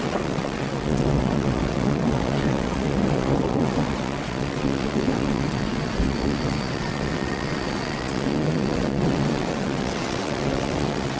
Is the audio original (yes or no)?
no